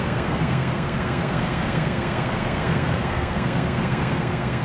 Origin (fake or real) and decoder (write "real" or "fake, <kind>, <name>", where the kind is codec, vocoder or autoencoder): fake, codec, SNAC